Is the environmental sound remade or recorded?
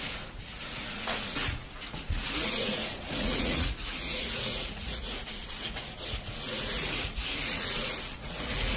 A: remade